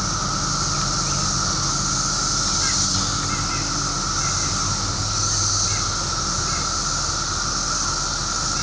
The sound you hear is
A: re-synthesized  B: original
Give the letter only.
B